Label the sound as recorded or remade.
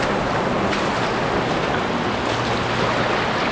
recorded